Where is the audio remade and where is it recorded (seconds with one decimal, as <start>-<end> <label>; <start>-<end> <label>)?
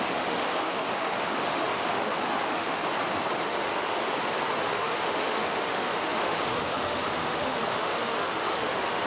0.0-2.8 remade; 2.8-3.4 recorded; 3.4-4.0 remade; 4.0-4.6 recorded; 4.6-9.1 remade